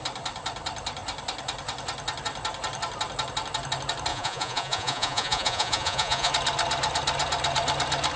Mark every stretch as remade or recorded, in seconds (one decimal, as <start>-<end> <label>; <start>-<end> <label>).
0.0-4.1 recorded; 4.1-6.3 remade; 6.3-8.2 recorded